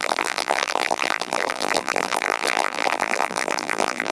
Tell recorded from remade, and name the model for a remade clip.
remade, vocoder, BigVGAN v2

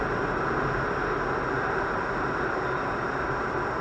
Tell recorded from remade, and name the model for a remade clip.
recorded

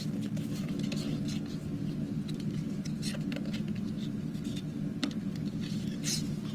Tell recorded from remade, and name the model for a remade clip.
recorded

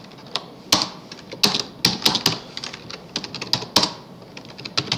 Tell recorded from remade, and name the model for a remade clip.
recorded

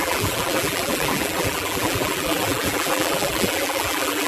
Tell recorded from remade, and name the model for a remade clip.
remade, vocoder, BigVGAN v2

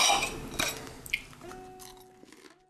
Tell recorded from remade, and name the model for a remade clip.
recorded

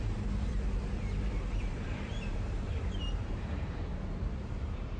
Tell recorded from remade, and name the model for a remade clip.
remade, vocoder, BigVGAN v2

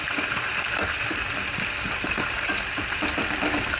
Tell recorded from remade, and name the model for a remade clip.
remade, vocoder, BigVGAN v2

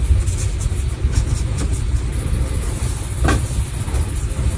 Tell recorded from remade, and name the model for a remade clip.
remade, vocoder, BigVGAN v2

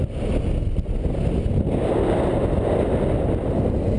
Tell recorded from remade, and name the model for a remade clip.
recorded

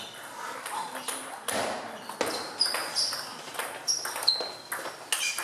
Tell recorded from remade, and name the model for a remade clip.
recorded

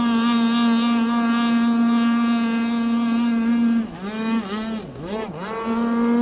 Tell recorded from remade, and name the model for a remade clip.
recorded